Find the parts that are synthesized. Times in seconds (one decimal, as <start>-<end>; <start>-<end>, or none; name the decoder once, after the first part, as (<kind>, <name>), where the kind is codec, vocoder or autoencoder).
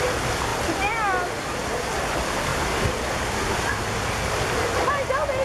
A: none